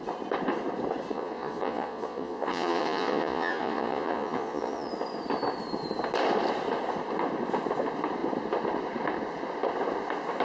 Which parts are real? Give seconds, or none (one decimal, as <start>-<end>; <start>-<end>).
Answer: 0.0-1.1; 4.9-10.4

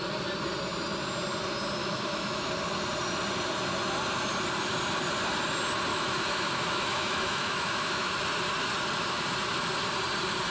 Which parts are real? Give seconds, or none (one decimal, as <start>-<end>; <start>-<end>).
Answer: 0.0-1.8; 2.5-5.9; 8.1-10.5

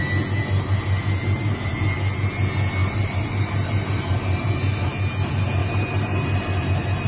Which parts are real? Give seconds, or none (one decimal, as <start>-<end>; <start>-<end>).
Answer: 0.0-0.4; 1.7-2.8; 4.9-5.6

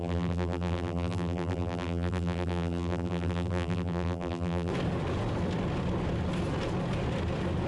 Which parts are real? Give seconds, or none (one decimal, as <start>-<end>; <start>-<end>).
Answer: 4.7-7.7

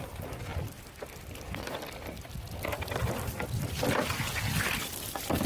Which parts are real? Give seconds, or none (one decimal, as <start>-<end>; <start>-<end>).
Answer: 0.0-5.5

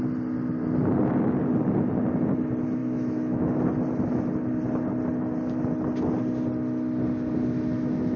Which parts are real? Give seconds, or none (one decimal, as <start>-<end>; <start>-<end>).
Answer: 0.0-2.8; 3.6-8.2